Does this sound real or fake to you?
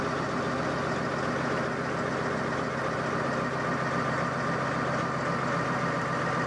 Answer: real